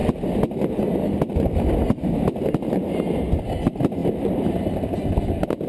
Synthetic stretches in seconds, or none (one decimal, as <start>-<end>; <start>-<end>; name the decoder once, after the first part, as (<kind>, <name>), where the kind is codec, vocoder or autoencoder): none